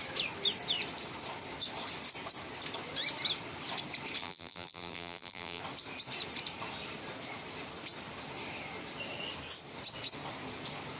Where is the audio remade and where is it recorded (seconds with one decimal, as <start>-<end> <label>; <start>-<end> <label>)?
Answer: 0.0-4.2 recorded; 4.2-5.6 remade; 5.6-11.0 recorded